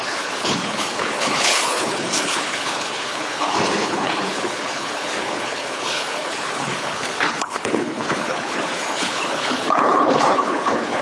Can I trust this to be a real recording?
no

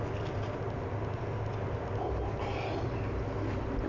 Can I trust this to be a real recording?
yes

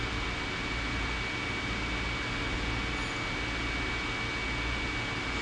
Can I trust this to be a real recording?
yes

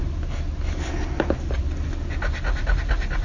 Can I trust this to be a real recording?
yes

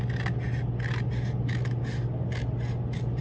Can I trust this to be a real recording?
yes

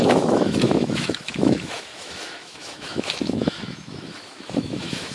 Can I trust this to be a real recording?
no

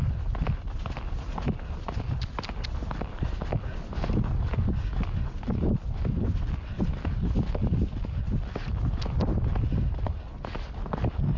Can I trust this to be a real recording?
yes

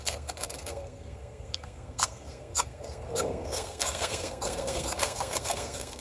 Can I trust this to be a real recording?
no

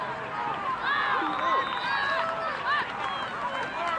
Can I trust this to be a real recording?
yes